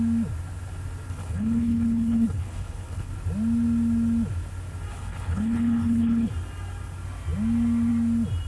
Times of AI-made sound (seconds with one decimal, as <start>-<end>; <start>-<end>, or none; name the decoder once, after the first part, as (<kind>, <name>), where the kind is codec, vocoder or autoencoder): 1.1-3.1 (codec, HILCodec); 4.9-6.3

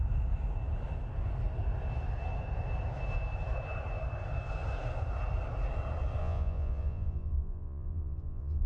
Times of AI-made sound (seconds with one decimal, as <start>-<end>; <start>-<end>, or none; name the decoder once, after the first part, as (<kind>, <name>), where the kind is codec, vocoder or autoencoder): 6.2-8.7 (vocoder, Vocos)

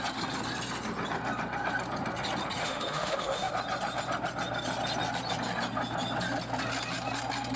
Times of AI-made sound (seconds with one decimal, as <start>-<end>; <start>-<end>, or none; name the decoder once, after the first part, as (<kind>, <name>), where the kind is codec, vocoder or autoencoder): 2.6-3.5 (autoencoder, DAC-VAE)

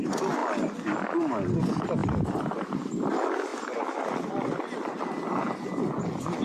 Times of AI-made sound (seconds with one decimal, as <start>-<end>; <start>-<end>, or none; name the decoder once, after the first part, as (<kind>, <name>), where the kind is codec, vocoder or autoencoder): 2.0-2.8 (vocoder, BigVGAN v2)